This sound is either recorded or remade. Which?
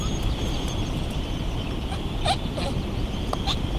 recorded